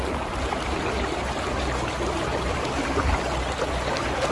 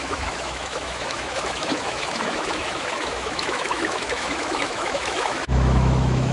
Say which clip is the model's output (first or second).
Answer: second